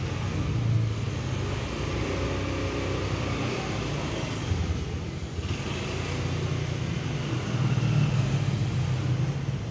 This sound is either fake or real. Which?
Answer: real